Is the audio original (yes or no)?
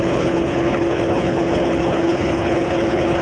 no